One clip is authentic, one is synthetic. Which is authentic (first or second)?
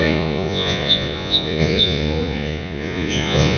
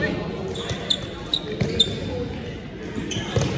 second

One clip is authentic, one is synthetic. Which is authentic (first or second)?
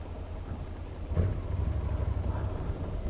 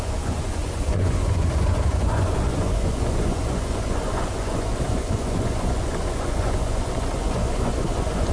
first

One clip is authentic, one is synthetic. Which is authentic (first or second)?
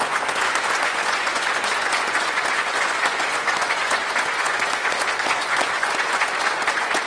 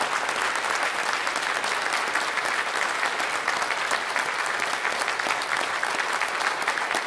second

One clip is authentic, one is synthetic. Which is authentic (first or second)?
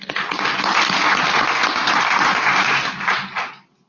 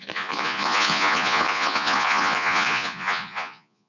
first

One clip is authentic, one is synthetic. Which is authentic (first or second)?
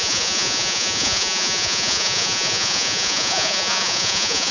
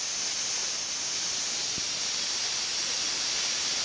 second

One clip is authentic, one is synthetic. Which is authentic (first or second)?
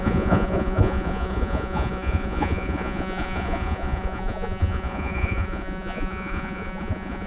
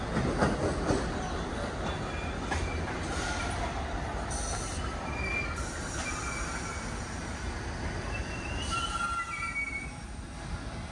second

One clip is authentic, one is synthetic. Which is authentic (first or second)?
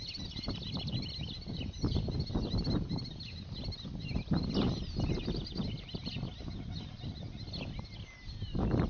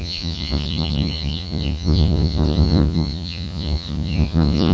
first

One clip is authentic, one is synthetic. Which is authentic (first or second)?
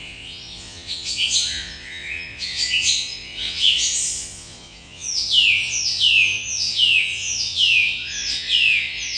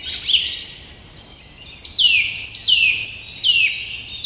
second